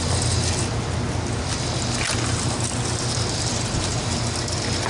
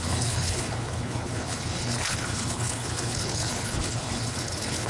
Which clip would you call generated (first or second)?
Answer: second